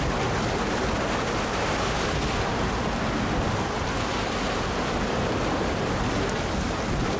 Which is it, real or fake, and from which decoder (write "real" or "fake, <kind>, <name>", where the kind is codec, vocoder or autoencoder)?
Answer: real